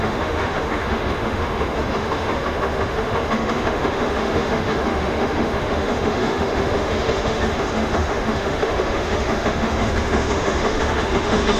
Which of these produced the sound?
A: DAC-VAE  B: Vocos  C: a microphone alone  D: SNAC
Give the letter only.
A